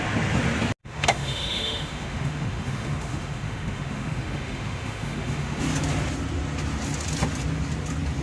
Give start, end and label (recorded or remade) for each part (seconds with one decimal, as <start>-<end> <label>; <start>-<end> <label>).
0.0-0.8 recorded; 0.8-5.6 remade; 5.6-8.2 recorded